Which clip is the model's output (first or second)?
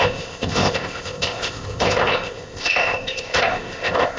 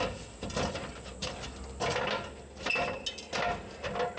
first